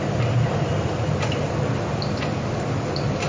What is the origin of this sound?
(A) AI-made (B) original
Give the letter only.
B